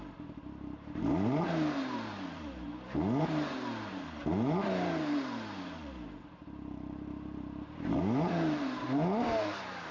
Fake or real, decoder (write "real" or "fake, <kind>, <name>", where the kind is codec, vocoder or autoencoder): fake, vocoder, BigVGAN v2